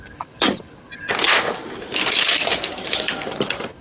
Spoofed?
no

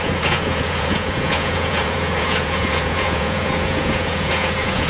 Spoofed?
yes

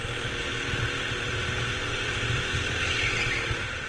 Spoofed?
no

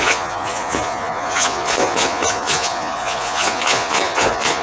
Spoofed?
yes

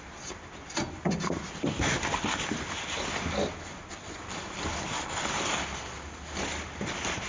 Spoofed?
no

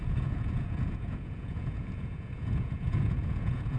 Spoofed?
yes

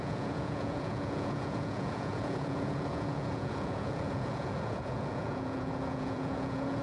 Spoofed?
yes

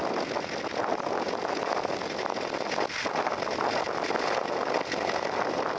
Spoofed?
no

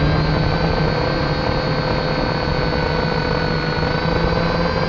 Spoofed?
no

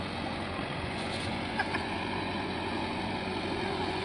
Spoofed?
yes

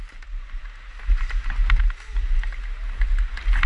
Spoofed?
no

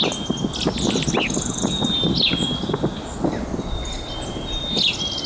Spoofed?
no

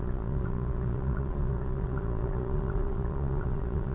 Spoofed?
yes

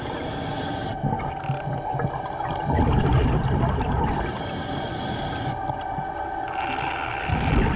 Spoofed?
no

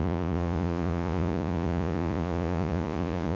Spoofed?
yes